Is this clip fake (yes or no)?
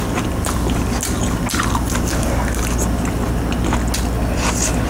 no